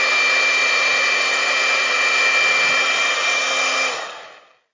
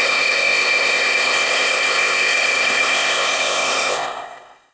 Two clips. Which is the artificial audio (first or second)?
second